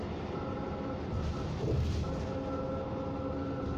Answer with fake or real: real